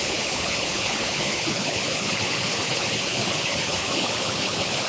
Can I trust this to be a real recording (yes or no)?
no